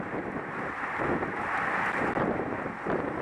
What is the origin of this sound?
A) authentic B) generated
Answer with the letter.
A